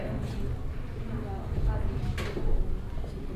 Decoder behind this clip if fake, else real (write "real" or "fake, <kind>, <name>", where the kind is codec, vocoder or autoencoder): real